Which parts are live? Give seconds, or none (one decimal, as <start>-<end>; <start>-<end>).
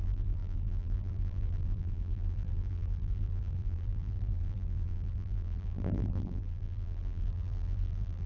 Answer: none